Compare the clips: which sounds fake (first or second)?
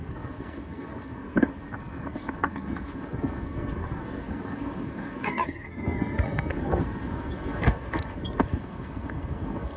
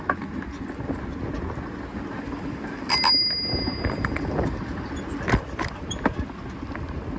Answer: first